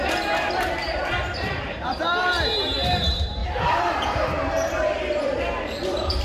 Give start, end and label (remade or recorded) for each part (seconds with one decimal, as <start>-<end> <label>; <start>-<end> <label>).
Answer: 0.0-0.8 recorded; 0.8-2.3 remade; 2.3-3.4 recorded; 3.4-6.2 remade